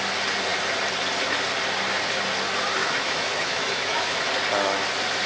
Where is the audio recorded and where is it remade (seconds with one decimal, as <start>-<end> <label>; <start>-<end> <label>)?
0.0-2.8 recorded; 2.8-4.3 remade; 4.3-5.3 recorded